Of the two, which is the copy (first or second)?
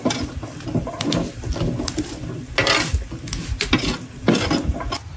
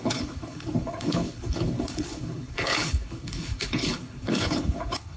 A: second